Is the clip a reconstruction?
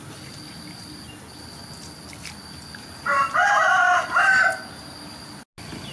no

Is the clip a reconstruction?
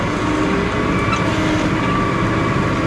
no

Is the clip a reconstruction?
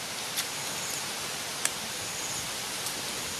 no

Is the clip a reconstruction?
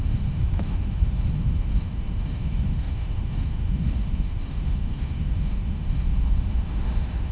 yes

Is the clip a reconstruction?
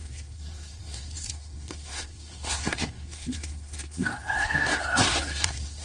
yes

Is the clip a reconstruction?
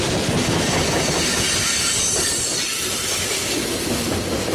no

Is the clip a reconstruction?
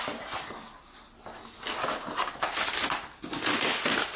no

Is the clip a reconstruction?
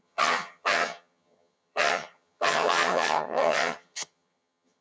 yes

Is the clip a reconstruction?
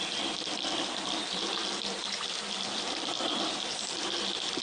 no